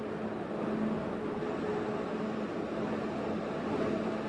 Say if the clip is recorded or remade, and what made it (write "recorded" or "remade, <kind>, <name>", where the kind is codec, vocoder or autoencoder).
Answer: recorded